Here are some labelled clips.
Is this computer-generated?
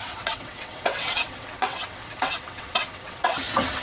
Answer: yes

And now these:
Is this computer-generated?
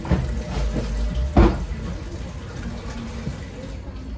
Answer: no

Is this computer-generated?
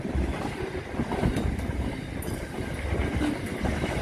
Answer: no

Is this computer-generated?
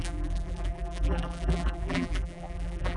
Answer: yes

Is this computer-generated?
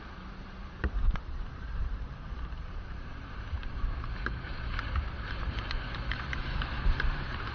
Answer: yes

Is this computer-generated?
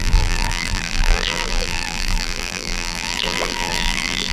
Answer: yes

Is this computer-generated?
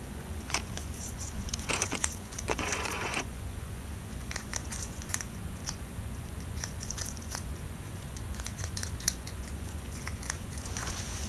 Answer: yes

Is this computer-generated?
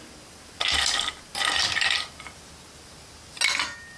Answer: no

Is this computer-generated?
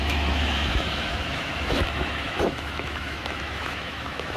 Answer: yes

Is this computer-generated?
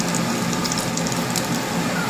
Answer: no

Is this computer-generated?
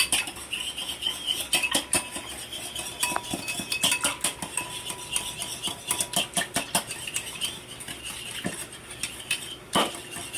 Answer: no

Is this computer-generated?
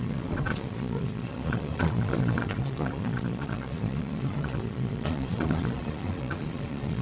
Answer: yes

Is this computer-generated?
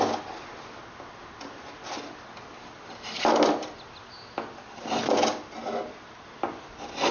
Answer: no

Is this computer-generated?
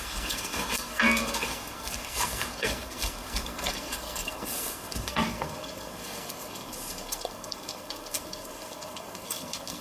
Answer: yes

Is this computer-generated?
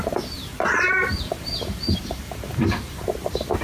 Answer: yes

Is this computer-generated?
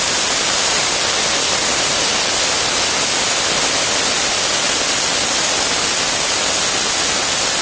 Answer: no